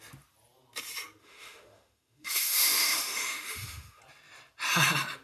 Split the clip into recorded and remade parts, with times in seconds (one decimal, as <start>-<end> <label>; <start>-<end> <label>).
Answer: 0.0-1.2 recorded; 1.2-4.0 remade; 4.0-5.2 recorded